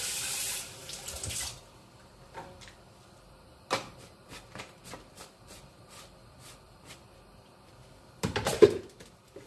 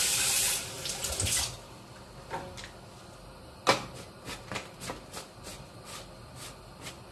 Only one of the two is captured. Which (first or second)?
second